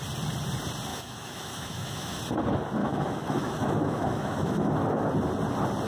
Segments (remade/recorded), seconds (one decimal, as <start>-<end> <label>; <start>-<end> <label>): 0.0-0.9 recorded; 0.9-2.2 remade; 2.2-2.8 recorded; 2.8-4.7 remade; 4.7-5.9 recorded